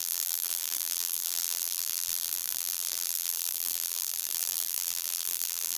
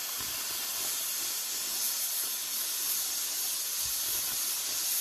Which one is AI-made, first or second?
first